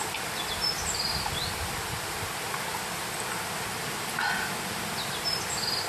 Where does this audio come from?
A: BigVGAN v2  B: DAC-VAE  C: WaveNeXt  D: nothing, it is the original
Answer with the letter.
D